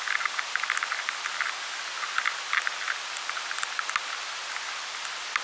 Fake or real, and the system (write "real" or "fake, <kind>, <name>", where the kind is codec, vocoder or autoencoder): real